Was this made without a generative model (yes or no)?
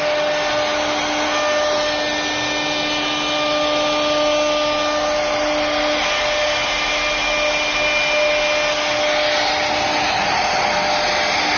yes